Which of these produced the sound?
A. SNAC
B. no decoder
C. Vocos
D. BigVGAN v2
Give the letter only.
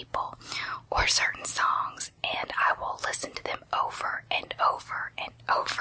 B